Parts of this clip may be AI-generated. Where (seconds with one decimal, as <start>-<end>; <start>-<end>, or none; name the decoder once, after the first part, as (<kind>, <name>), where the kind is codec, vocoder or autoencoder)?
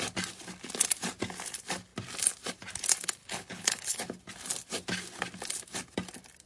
3.2-4.0 (codec, HILCodec)